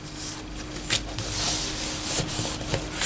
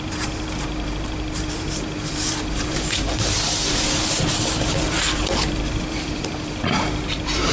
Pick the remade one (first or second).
second